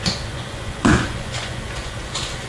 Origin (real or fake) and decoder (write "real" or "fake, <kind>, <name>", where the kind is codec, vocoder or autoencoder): fake, vocoder, Vocos